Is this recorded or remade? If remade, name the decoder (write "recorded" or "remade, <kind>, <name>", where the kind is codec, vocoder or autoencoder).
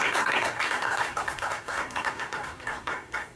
remade, codec, SNAC